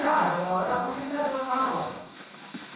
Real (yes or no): no